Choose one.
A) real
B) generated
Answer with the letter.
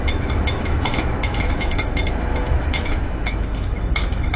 B